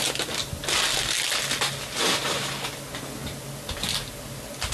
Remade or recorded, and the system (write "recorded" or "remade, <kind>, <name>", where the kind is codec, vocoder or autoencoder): recorded